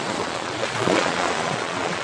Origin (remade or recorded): remade